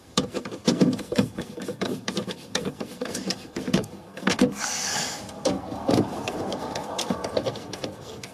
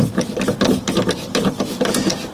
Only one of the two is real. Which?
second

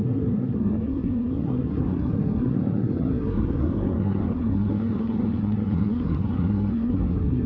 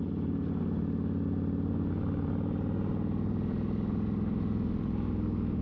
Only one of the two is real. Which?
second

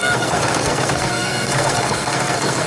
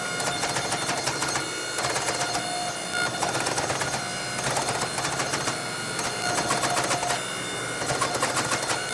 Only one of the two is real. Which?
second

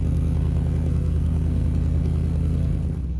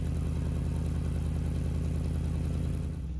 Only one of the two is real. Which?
second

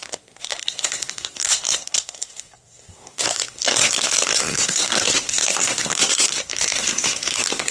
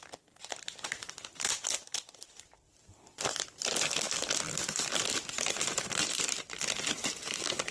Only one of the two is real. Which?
second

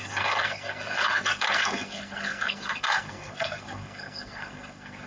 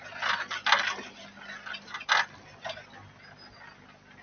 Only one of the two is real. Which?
second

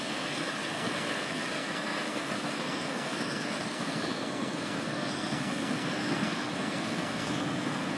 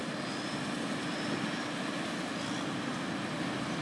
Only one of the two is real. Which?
second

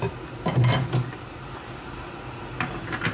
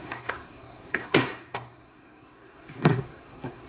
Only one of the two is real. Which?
first